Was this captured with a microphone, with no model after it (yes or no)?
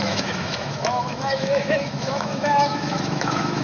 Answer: no